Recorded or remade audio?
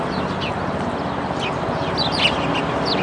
recorded